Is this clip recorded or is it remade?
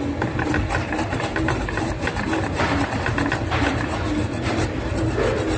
remade